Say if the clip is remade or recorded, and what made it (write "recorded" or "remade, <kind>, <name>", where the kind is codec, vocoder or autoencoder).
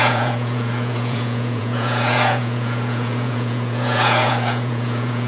remade, vocoder, Vocos